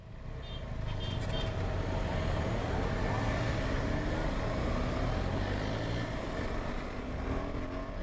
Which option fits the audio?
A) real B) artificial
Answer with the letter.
A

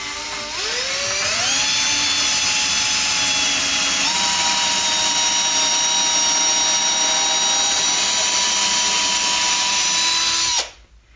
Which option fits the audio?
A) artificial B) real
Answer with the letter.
B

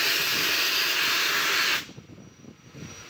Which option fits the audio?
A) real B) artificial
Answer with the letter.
A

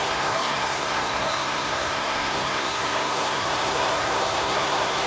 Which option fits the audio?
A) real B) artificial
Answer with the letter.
B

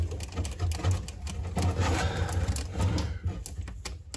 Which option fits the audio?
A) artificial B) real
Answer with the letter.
B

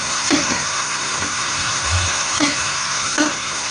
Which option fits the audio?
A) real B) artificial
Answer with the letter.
B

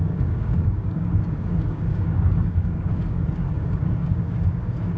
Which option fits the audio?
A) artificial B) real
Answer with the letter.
A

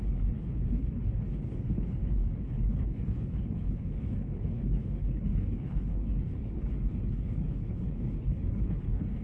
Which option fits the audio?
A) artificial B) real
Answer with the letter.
A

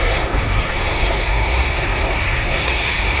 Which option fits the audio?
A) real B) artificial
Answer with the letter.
B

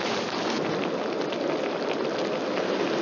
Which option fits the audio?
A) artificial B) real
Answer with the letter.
B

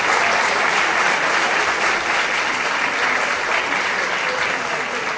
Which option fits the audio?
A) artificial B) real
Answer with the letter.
B